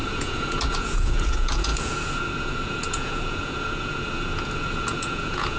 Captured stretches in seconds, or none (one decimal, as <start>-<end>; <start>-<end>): none

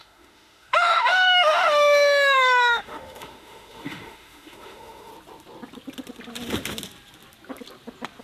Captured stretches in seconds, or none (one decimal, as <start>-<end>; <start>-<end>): 5.1-8.2

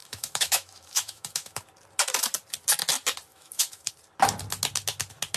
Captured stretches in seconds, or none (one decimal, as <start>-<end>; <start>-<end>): 1.6-3.3; 3.9-5.4

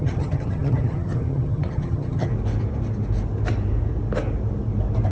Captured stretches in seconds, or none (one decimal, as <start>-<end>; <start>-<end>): 2.3-5.1